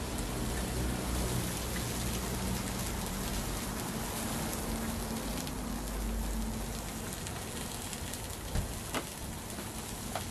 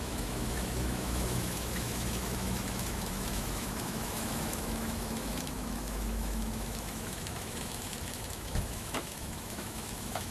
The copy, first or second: second